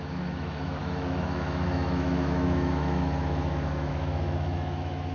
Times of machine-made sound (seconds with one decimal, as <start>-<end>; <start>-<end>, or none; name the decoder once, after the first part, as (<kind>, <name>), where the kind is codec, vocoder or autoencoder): 0.0-5.1 (autoencoder, DAC-VAE)

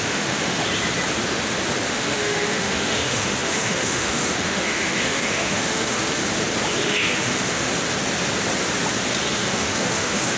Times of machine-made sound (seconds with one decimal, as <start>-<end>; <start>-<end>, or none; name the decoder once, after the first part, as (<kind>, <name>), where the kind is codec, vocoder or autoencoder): 0.0-0.6 (autoencoder, DAC-VAE); 1.9-6.2; 6.8-7.7; 9.3-10.4

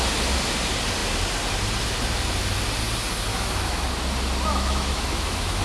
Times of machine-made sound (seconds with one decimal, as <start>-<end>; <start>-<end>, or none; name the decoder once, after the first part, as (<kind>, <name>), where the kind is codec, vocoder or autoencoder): 3.3-3.9 (autoencoder, DAC-VAE); 4.5-5.6

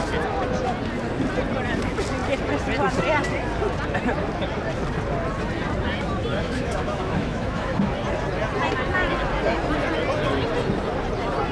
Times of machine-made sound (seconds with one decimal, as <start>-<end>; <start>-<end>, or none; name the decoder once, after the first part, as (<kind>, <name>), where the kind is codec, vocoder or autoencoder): 6.3-7.9 (autoencoder, DAC-VAE)